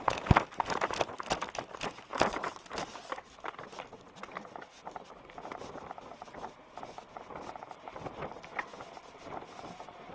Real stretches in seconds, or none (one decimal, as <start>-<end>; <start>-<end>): 0.0-10.1